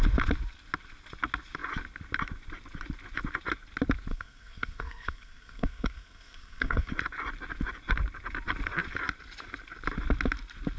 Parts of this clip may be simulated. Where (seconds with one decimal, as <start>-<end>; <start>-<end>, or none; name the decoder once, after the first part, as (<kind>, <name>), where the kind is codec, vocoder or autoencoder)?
4.1-6.9 (codec, SNAC)